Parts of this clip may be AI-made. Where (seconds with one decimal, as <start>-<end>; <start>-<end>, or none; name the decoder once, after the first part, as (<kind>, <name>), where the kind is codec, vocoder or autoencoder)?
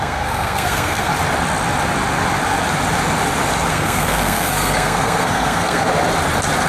0.0-1.1 (codec, SNAC); 3.7-5.9